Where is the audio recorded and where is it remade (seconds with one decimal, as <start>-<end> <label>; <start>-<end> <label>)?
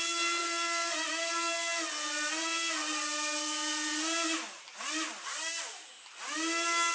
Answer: 0.0-6.9 recorded